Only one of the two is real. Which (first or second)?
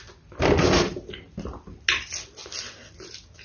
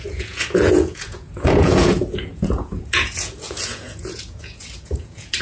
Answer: first